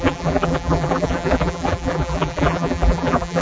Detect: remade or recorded remade